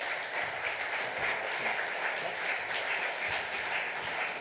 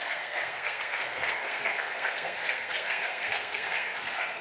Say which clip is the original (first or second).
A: first